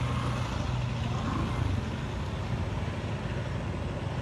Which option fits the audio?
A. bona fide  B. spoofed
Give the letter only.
A